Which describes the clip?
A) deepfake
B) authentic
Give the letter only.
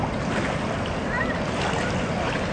B